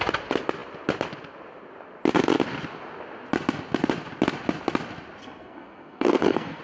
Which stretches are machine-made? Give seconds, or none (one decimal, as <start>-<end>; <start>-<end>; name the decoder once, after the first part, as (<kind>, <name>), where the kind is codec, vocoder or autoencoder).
5.2-6.6 (codec, SNAC)